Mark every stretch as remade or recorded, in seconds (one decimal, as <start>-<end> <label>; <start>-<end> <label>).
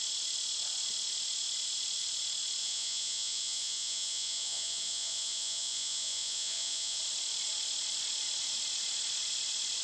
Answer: 0.0-2.6 recorded; 2.6-7.0 remade; 7.0-9.8 recorded